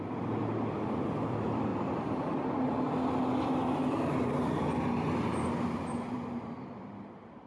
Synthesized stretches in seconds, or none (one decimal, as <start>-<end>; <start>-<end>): 0.0-1.7; 3.3-7.5